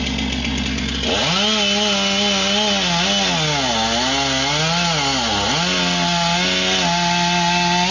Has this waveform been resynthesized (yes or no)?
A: no